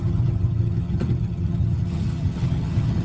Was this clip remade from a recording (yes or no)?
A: yes